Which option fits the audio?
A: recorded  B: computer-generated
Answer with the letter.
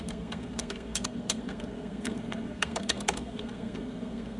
B